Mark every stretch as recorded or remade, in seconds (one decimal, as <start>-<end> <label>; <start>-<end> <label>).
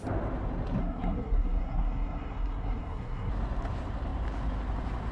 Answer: 0.0-0.8 recorded; 0.8-3.3 remade; 3.3-5.1 recorded